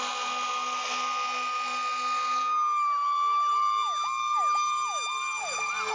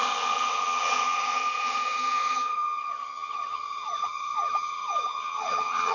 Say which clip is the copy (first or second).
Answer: second